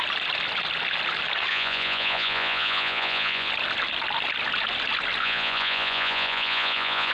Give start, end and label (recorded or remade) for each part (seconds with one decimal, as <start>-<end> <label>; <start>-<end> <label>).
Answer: 0.0-1.5 recorded; 1.5-3.5 remade; 3.5-5.2 recorded; 5.2-7.1 remade